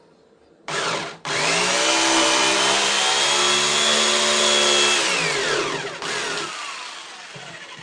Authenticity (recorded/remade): recorded